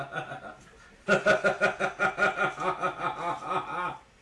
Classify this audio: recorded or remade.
recorded